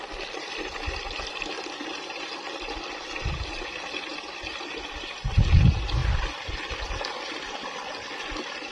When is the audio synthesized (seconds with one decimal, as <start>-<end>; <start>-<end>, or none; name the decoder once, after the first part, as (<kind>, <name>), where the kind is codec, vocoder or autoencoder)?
none